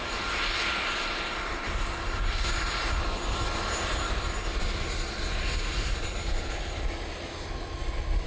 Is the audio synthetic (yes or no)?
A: no